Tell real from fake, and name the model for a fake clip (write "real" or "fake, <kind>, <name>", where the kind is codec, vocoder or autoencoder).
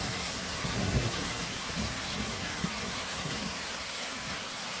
fake, codec, SNAC